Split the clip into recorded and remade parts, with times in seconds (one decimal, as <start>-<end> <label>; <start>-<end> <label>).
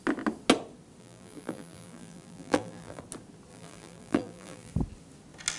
0.0-1.0 recorded; 1.0-3.0 remade; 3.0-3.5 recorded; 3.5-4.7 remade; 4.7-5.6 recorded